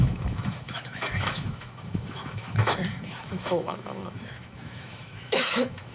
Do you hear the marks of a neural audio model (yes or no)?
yes